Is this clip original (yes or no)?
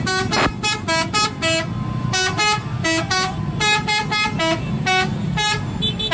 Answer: yes